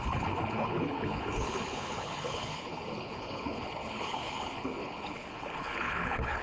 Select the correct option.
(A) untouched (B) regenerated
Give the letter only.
B